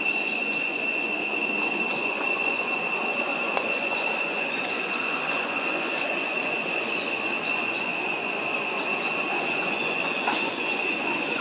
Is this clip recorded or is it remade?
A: remade